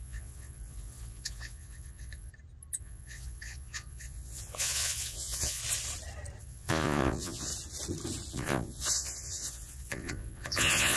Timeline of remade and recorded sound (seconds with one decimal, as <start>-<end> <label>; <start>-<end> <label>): 0.0-2.3 remade; 2.3-2.8 recorded; 2.8-5.6 remade; 5.6-6.4 recorded; 6.4-7.5 remade; 7.5-8.3 recorded; 8.3-11.0 remade